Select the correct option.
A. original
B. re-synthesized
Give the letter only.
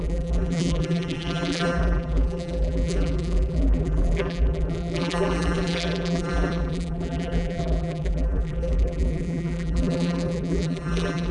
B